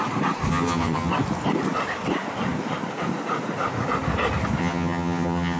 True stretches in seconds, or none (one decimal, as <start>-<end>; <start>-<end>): 0.0-0.5; 1.1-4.6